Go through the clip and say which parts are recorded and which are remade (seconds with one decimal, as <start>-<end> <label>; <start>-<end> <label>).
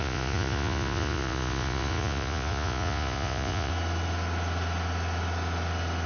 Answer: 0.0-3.7 remade; 3.7-6.1 recorded